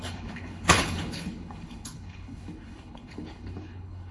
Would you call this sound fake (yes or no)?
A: yes